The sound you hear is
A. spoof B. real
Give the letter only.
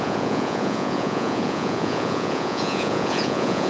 A